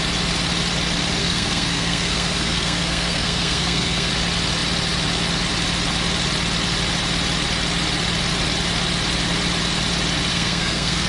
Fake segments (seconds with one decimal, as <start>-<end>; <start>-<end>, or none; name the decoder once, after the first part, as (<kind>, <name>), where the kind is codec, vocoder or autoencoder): 1.2-4.1 (codec, SNAC); 10.3-11.1